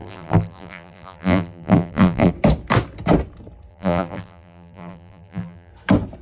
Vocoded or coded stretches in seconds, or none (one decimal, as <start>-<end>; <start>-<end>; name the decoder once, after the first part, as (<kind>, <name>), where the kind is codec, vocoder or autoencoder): 0.0-2.3 (vocoder, BigVGAN v2); 3.7-5.7